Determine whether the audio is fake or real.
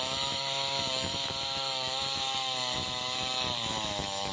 fake